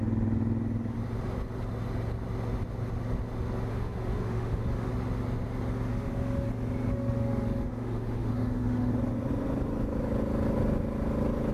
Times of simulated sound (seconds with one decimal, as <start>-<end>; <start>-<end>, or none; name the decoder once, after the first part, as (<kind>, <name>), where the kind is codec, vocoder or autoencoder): 3.7-4.9 (autoencoder, DAC-VAE); 5.9-6.5; 6.9-8.9